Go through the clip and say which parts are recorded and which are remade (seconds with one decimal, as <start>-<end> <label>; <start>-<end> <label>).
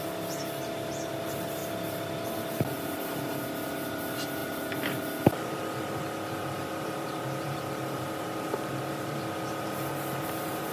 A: 0.0-1.6 recorded; 1.6-3.0 remade; 3.0-4.4 recorded; 4.4-9.2 remade; 9.2-10.7 recorded